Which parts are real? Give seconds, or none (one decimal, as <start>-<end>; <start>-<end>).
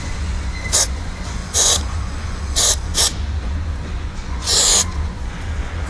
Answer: none